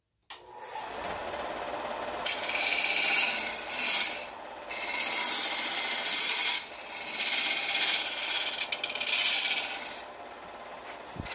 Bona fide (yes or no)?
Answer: yes